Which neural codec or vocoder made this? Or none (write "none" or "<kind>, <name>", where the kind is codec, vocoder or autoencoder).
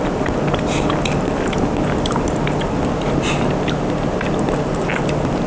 none